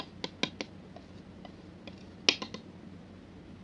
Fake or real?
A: real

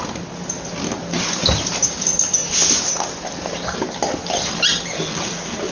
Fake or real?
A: real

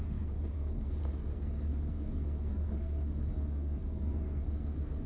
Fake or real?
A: fake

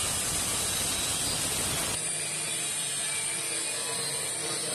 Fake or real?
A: real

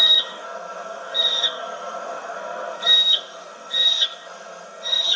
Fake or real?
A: fake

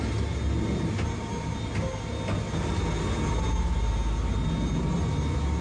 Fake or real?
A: real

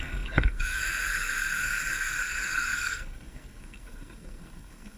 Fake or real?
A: fake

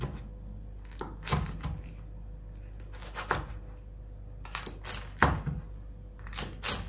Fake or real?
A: real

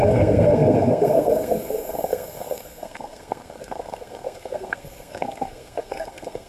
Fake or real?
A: fake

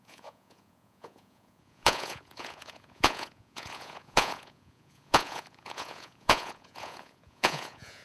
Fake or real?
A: fake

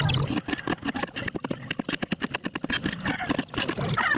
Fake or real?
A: real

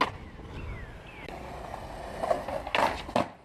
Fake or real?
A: real